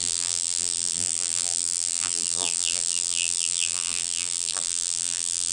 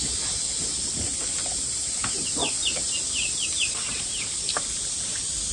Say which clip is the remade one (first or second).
first